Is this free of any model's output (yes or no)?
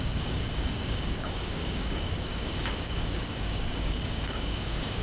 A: no